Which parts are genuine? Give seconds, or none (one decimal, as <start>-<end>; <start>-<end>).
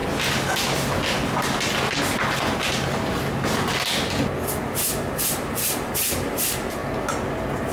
0.0-4.6; 6.8-7.7